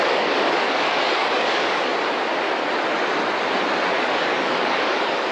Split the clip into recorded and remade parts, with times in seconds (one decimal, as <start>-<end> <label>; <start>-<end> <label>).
0.0-1.9 remade; 1.9-4.0 recorded; 4.0-5.3 remade